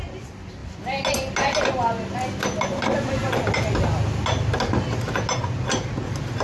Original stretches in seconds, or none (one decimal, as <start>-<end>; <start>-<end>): 0.0-6.4